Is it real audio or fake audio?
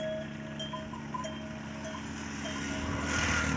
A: real